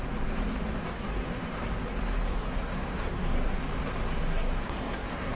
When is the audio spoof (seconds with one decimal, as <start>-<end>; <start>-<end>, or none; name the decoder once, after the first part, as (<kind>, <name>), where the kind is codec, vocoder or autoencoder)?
0.9-1.4 (codec, SNAC); 2.3-3.6; 4.3-5.3